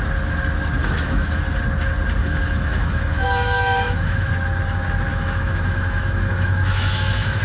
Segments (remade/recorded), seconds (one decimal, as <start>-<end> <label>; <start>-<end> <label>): 0.0-0.8 recorded; 0.8-1.4 remade; 1.4-2.2 recorded; 2.2-4.3 remade; 4.3-5.1 recorded; 5.1-7.4 remade